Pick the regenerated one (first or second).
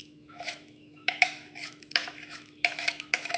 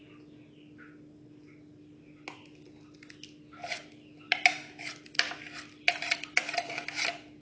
first